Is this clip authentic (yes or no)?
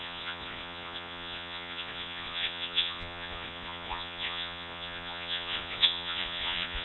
no